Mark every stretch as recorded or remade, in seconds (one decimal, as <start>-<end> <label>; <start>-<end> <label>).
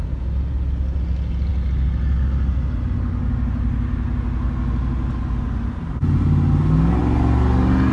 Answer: 0.0-7.9 recorded